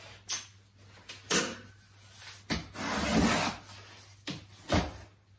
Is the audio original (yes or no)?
yes